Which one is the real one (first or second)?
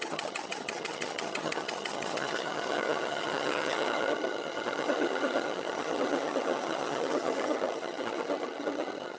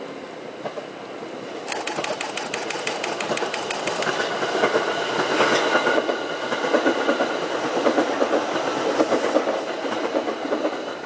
second